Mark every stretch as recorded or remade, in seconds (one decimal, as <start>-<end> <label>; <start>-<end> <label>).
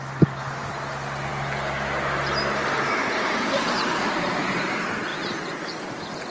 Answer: 0.0-5.1 recorded; 5.1-5.7 remade; 5.7-6.3 recorded